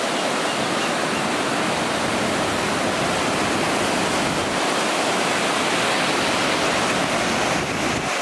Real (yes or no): yes